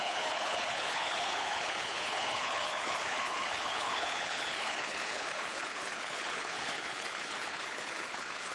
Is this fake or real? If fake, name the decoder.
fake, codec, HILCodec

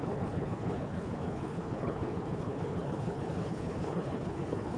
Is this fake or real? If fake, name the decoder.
fake, codec, HILCodec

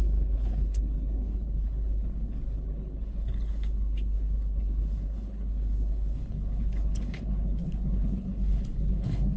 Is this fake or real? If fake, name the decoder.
fake, codec, HILCodec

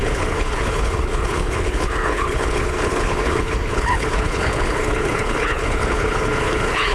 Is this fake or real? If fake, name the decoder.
fake, codec, HILCodec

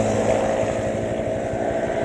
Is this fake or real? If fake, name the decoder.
real